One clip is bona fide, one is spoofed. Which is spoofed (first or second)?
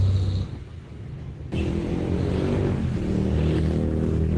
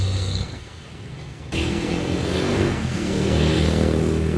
second